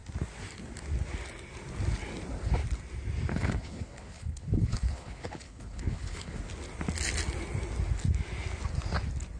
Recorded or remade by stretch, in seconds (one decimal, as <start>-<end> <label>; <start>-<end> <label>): 0.0-3.3 recorded; 3.3-6.4 remade; 6.4-9.4 recorded